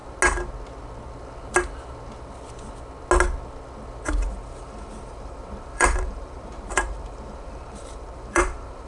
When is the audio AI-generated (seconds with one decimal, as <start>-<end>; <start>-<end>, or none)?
4.3-8.9